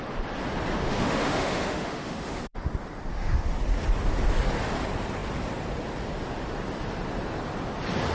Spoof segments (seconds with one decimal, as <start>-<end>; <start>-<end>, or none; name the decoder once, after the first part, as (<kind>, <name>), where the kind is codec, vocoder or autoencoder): 0.7-2.4 (autoencoder, DAC-VAE); 3.1-3.6